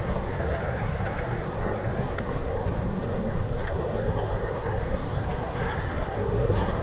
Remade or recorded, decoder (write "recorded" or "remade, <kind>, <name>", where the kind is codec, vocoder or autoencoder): remade, codec, SNAC